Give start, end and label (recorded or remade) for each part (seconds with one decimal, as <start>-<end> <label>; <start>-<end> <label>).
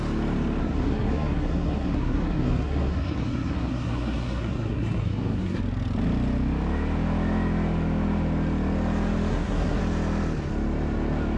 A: 0.0-0.6 recorded; 0.6-5.6 remade; 5.6-9.3 recorded; 9.3-9.8 remade; 9.8-11.4 recorded